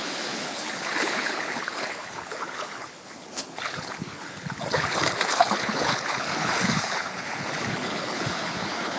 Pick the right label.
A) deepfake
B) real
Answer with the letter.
A